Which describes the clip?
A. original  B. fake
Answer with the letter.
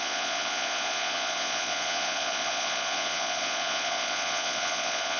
B